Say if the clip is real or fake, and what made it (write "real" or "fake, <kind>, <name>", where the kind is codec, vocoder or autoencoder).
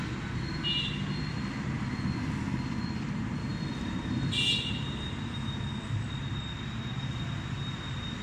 real